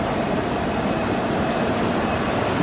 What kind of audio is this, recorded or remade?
remade